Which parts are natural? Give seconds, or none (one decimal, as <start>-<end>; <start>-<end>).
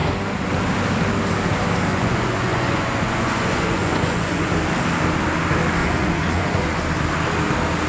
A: 0.0-1.9; 4.5-5.8; 6.8-7.9